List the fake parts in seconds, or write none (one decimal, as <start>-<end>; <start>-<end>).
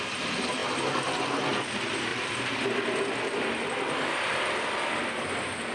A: 0.6-1.4; 2.1-3.7